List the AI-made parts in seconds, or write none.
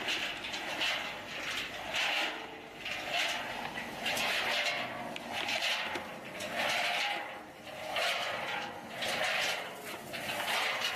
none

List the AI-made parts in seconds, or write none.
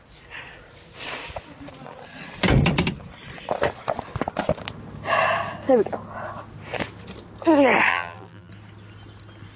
7.9-8.5 (vocoder, BigVGAN v2)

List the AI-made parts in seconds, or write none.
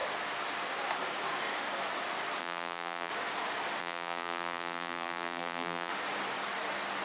2.4-3.1 (vocoder, BigVGAN v2); 3.8-5.9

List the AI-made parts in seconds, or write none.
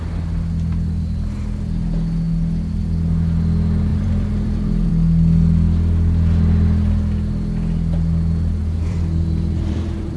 3.9-4.9 (vocoder, BigVGAN v2); 8.6-10.2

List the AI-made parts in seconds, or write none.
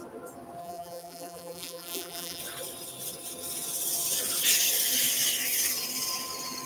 0.6-2.4 (vocoder, BigVGAN v2)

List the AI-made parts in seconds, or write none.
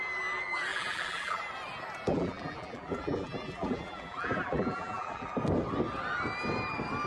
0.7-1.4 (vocoder, BigVGAN v2); 2.1-5.3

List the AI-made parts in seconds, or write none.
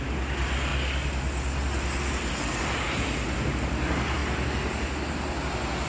none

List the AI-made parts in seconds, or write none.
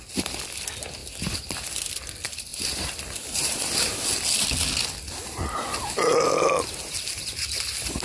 1.0-2.0 (vocoder, BigVGAN v2); 2.5-3.9